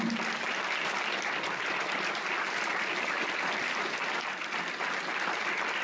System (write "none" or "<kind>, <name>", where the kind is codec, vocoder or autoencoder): none